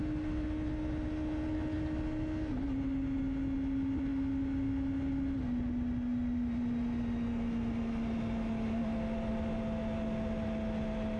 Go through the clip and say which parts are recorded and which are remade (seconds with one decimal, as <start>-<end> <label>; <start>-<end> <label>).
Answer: 0.0-11.2 recorded

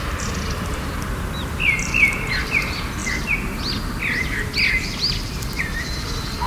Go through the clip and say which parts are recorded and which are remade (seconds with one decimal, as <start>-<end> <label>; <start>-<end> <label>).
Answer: 0.0-6.5 remade

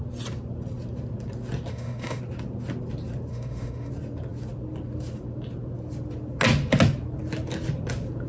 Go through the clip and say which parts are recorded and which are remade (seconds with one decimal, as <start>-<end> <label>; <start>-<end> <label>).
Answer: 0.0-1.7 recorded; 1.7-2.2 remade; 2.2-3.3 recorded; 3.3-3.9 remade; 3.9-8.3 recorded